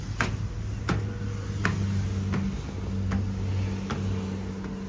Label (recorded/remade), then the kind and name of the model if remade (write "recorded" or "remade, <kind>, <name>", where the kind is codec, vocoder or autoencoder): recorded